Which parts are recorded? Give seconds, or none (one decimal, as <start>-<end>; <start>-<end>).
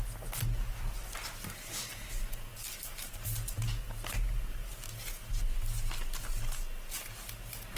0.0-7.8